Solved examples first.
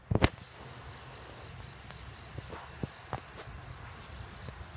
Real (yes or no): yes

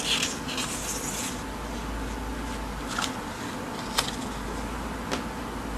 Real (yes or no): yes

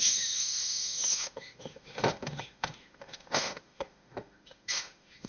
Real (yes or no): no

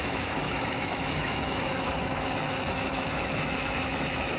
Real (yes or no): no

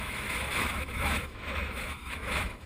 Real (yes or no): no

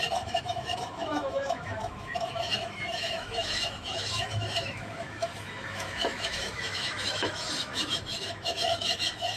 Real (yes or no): no